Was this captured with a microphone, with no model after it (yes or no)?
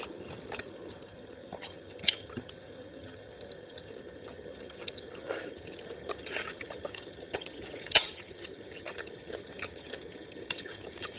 no